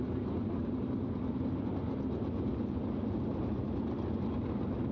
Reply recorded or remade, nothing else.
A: recorded